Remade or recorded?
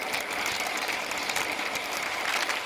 remade